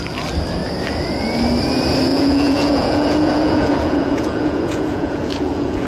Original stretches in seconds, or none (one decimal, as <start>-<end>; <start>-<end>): 0.0-2.1